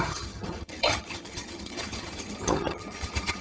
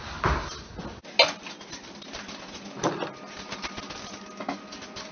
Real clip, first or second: second